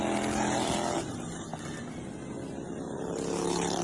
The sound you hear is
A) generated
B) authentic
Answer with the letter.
B